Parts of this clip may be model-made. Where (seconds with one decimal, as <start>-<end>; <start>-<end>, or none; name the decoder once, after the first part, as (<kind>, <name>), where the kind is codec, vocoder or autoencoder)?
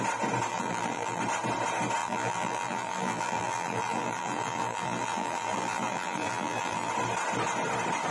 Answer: 0.5-1.2 (vocoder, BigVGAN v2); 2.0-6.9